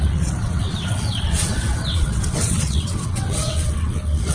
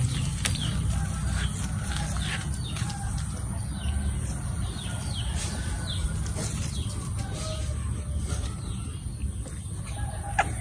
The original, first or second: second